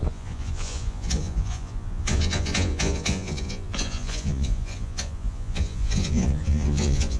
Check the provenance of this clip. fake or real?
fake